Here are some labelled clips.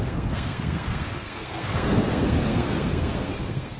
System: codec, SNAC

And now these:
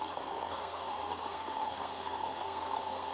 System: codec, SNAC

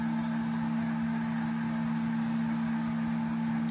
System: none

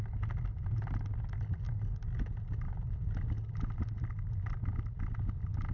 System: none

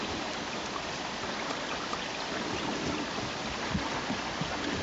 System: none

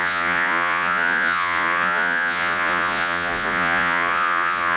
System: vocoder, Vocos